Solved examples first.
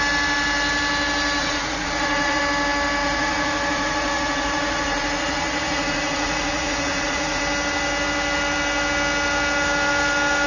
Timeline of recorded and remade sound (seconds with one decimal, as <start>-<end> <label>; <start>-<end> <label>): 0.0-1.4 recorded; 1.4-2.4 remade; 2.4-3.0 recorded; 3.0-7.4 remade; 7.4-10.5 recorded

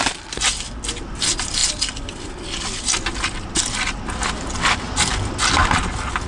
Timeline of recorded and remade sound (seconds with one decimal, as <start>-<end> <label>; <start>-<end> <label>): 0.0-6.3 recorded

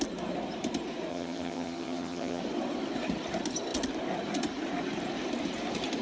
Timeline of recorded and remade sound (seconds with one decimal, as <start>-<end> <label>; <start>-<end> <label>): 0.0-1.1 recorded; 1.1-2.4 remade; 2.4-6.0 recorded

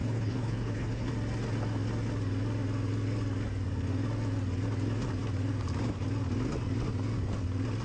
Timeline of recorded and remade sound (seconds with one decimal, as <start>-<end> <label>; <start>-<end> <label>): 0.0-1.1 remade; 1.1-7.8 recorded

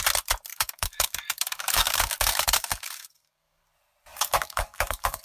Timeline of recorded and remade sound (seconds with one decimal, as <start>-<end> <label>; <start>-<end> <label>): 0.0-0.5 recorded; 0.5-3.6 remade; 3.6-4.1 recorded; 4.1-5.2 remade

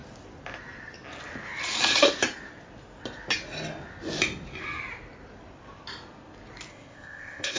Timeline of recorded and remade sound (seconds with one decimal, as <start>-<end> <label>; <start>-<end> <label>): 0.0-6.7 recorded; 6.7-7.6 remade

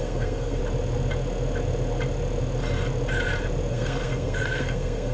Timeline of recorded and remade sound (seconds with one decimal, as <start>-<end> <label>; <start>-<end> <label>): 0.0-0.6 remade; 0.6-3.7 recorded; 3.7-5.1 remade